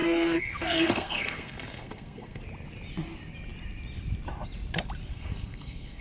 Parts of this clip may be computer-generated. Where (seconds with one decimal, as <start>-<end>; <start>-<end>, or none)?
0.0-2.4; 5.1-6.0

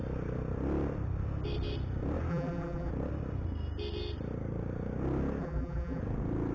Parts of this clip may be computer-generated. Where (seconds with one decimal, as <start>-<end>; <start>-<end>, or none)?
2.3-2.9; 5.4-6.0

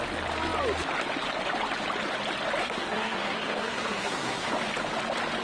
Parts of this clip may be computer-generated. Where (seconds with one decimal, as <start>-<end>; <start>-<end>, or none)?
2.6-4.5

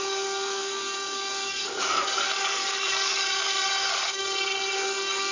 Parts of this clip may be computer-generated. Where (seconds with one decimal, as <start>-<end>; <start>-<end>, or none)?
0.0-5.3